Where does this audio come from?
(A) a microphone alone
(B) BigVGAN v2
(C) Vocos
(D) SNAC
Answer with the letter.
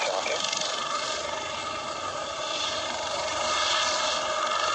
A